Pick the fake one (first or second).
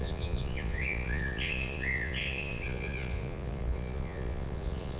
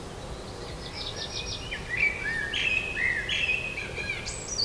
first